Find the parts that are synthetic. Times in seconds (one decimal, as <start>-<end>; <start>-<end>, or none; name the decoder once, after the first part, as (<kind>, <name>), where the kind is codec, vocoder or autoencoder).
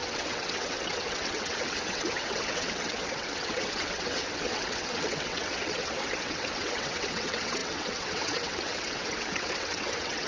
0.0-10.3 (vocoder, WaveNeXt)